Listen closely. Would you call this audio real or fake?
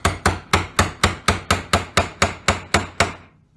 real